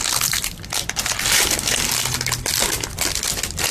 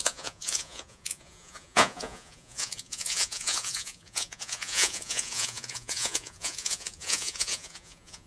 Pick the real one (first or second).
first